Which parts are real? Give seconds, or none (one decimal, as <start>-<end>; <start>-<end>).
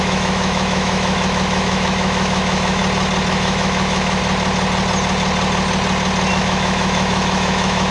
2.8-3.3; 4.2-6.3